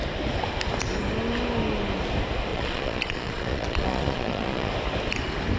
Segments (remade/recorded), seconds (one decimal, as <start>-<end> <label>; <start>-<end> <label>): 0.0-2.5 recorded; 2.5-4.7 remade; 4.7-5.6 recorded